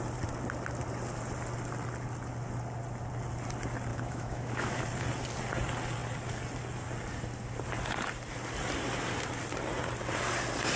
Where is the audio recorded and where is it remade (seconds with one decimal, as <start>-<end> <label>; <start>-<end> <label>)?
0.0-3.9 recorded; 3.9-4.8 remade; 4.8-10.8 recorded